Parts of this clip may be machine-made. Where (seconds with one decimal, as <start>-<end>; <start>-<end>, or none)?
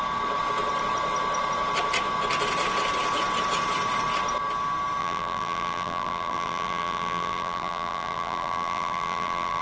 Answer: 5.0-9.6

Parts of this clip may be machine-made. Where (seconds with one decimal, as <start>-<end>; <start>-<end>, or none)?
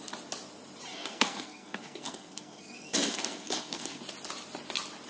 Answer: 0.9-4.0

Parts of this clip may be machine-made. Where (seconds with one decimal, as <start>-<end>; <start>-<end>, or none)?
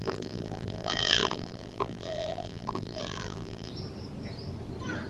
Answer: 0.0-3.7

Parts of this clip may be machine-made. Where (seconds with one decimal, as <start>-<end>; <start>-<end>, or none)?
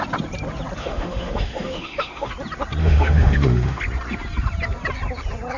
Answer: 0.8-2.3; 2.8-3.8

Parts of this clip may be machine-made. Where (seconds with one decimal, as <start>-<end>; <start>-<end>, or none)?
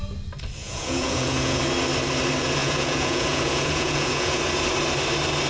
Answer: 0.6-1.6; 2.6-4.4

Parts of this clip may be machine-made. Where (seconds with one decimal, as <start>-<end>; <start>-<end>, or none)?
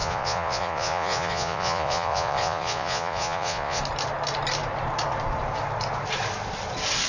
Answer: 0.0-3.8